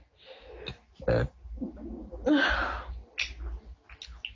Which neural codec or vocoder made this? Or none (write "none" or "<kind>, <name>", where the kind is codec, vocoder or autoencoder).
none